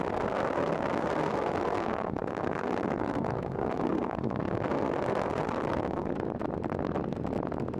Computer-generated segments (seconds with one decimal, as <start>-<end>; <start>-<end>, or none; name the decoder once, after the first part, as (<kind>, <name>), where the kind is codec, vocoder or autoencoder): 0.0-6.1 (codec, SNAC)